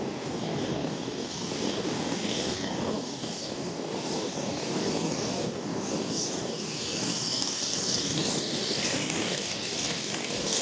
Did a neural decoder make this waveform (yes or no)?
yes